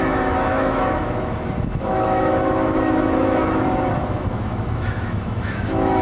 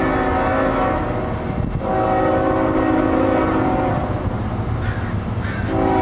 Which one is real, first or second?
second